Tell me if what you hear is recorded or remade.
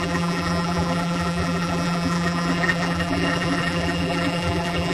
remade